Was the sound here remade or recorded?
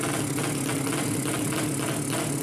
recorded